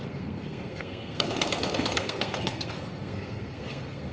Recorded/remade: remade